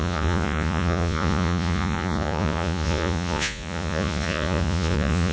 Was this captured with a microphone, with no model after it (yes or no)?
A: no